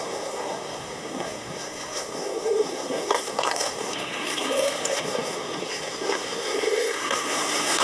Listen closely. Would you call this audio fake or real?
fake